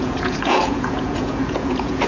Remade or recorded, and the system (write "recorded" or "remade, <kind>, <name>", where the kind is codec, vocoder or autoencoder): remade, vocoder, Vocos